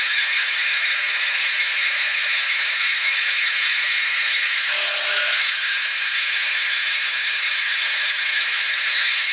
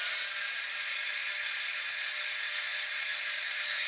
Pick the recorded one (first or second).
second